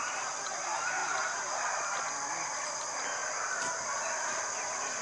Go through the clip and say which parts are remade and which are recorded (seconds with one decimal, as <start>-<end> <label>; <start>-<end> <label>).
0.0-5.0 recorded